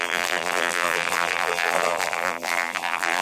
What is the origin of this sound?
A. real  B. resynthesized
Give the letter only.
B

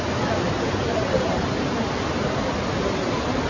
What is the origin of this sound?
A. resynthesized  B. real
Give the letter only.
B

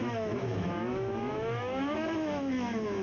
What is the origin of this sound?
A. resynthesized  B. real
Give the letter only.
A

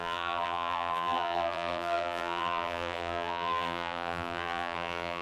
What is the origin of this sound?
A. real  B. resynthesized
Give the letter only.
B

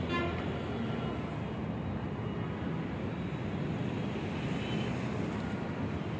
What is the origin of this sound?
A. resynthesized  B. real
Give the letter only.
B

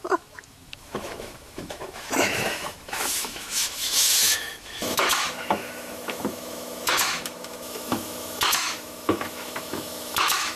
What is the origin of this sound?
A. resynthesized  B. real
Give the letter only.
A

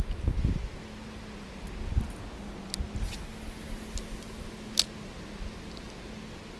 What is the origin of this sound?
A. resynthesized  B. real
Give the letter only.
B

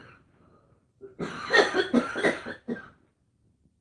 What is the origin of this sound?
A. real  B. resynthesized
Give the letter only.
B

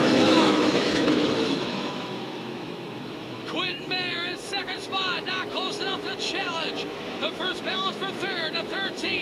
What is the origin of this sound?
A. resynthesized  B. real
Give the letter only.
A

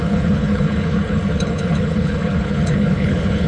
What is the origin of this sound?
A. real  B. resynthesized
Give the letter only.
B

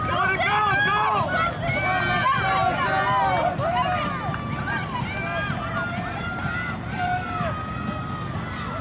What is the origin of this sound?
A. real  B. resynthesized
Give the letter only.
A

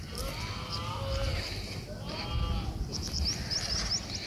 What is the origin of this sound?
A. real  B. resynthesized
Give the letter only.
A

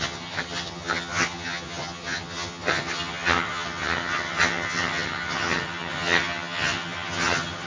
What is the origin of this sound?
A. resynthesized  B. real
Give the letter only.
A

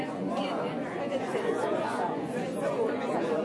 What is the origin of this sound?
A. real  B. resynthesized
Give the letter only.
B